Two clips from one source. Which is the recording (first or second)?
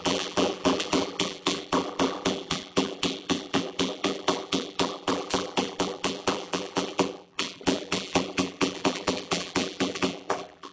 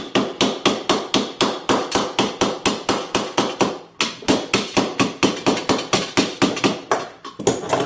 second